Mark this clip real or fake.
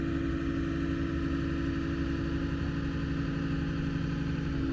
real